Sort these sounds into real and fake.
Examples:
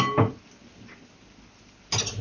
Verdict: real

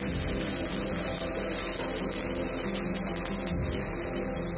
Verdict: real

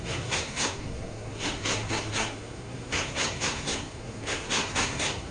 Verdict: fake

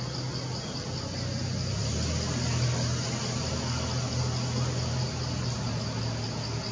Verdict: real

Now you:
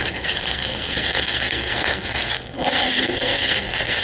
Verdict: fake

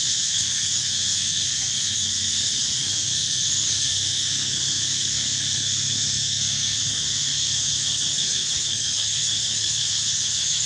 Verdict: fake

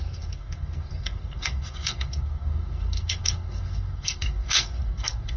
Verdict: fake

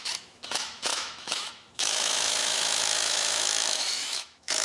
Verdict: fake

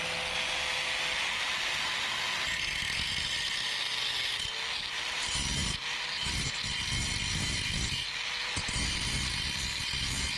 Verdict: real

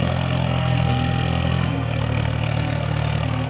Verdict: fake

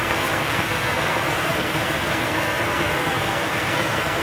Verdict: fake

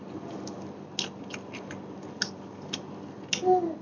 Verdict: real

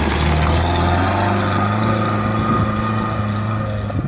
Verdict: real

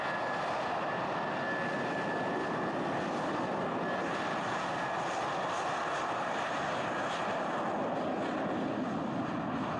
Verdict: real